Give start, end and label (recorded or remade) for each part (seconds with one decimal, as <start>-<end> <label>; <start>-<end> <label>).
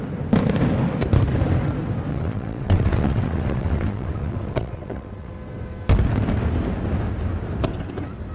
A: 0.0-2.1 recorded; 2.1-5.3 remade; 5.3-8.3 recorded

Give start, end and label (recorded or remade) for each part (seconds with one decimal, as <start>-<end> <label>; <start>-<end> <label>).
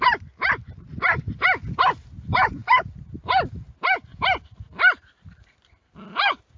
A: 0.0-6.6 recorded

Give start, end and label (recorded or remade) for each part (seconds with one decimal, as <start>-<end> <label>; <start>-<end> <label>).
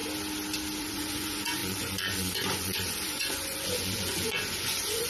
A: 0.0-0.8 recorded; 0.8-5.1 remade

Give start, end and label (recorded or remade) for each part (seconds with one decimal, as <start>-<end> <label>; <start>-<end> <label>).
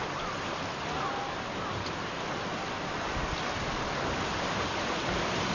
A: 0.0-5.5 recorded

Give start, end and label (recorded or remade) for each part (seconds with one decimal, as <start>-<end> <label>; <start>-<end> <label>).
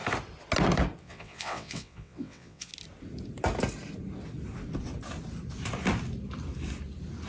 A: 0.0-1.0 recorded; 1.0-2.7 remade; 2.7-7.3 recorded